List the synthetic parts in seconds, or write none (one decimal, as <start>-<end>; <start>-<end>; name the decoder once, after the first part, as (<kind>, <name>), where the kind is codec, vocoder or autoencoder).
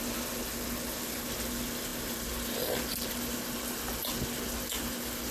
none